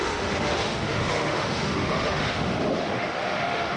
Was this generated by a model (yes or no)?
yes